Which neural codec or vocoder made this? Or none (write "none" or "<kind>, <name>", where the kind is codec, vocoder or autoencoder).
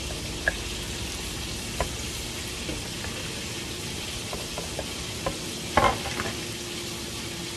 none